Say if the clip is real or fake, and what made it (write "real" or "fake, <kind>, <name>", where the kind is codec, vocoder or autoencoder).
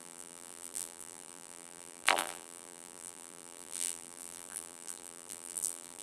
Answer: fake, vocoder, BigVGAN v2